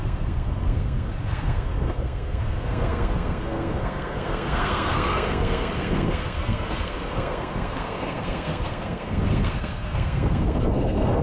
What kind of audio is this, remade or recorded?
remade